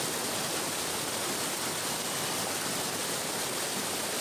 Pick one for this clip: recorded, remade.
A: recorded